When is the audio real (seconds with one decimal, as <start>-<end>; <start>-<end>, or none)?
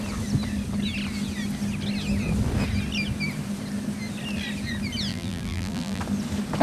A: 0.0-5.1; 6.0-6.6